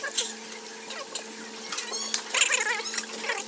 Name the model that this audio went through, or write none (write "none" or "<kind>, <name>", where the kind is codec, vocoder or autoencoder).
none